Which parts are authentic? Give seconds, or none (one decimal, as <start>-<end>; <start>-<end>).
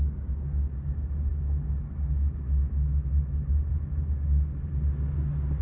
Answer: 0.0-5.6